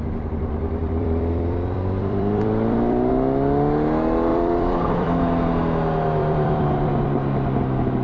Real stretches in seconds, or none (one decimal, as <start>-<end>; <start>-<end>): 0.0-0.8; 3.1-4.3; 5.2-6.2; 6.9-8.0